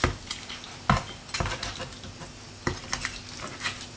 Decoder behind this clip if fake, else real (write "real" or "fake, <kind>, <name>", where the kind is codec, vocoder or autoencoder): real